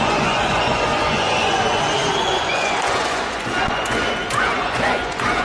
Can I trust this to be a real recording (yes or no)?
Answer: no